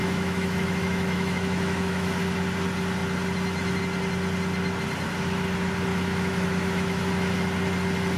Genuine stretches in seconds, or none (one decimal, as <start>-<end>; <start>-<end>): 2.2-5.9; 7.1-8.2